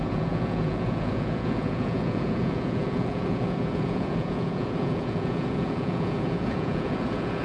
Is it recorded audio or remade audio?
remade